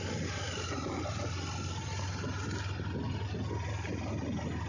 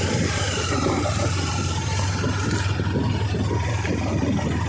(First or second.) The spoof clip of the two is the second